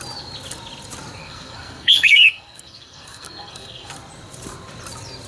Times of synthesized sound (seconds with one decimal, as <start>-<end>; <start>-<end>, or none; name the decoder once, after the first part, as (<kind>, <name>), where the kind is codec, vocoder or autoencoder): 1.2-3.9 (codec, SNAC)